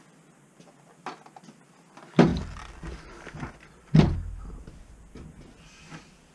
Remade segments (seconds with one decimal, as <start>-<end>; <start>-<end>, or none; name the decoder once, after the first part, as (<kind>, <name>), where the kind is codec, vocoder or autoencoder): none